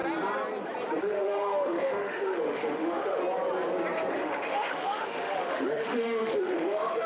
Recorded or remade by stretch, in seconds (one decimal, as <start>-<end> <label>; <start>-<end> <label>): 0.0-1.0 recorded; 1.0-3.2 remade; 3.2-4.1 recorded; 4.1-7.1 remade